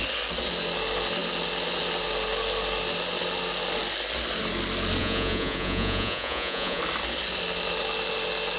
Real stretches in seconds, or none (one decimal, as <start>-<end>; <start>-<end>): 0.0-5.0; 6.8-8.6